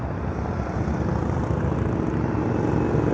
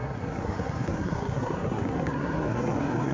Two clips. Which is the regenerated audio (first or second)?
second